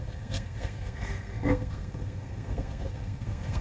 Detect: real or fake fake